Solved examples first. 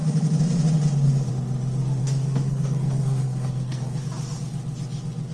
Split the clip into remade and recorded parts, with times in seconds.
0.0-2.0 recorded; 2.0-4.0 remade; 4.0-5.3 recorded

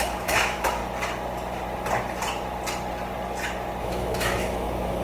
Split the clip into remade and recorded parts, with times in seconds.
0.0-0.8 remade; 0.8-3.8 recorded; 3.8-5.0 remade

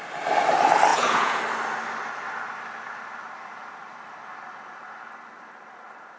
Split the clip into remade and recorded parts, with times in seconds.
0.0-0.9 recorded; 0.9-1.4 remade; 1.4-6.2 recorded

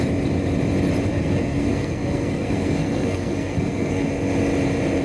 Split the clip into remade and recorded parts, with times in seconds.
0.0-1.1 recorded; 1.1-4.1 remade; 4.1-5.0 recorded